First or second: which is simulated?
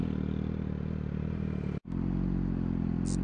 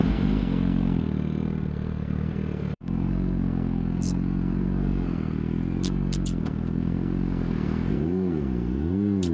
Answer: second